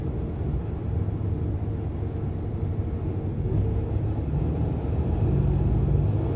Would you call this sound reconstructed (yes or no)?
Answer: no